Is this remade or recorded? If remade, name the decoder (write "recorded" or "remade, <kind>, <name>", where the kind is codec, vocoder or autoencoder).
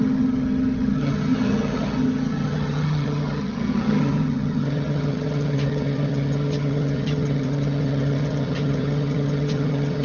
remade, vocoder, HiFi-GAN